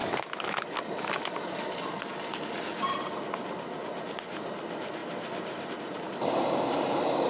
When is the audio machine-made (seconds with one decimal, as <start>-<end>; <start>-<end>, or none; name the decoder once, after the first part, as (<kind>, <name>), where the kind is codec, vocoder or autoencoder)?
0.0-0.6 (autoencoder, DAC-VAE)